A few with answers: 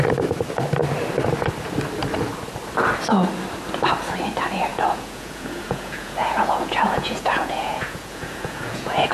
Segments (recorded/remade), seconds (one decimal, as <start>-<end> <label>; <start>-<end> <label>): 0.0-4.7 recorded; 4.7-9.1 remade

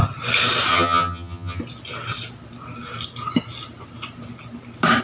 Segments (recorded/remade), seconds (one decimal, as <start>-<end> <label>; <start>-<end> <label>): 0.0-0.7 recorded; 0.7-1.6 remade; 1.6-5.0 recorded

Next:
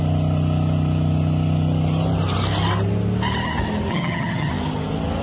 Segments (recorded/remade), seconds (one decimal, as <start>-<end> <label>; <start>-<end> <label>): 0.0-3.9 recorded; 3.9-4.5 remade; 4.5-5.2 recorded

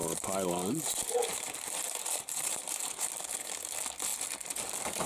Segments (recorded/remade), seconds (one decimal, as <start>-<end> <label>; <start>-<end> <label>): 0.0-3.1 remade; 3.1-5.1 recorded

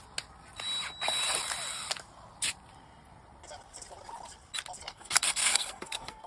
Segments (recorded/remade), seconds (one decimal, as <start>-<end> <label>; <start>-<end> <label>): 0.0-4.9 recorded; 4.9-6.3 remade

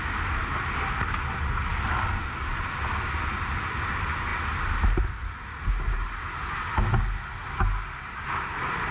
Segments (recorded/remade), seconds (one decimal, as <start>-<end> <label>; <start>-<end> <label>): 0.0-8.9 recorded